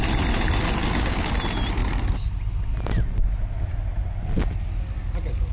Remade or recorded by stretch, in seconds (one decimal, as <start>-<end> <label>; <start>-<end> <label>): 0.0-0.8 recorded; 0.8-1.3 remade; 1.3-5.5 recorded